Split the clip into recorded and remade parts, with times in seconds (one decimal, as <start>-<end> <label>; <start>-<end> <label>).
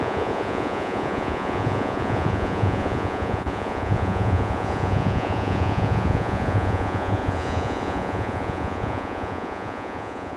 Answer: 0.0-10.4 remade